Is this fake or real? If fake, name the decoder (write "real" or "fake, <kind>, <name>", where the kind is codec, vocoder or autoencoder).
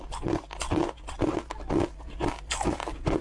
real